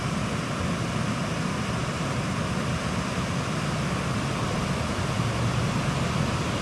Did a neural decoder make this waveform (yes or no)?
no